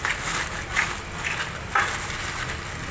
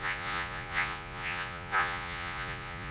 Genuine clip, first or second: first